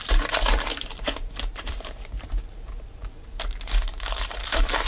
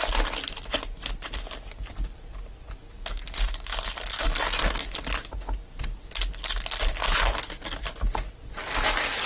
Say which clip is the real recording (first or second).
second